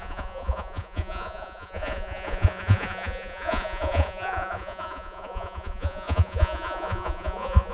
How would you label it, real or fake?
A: fake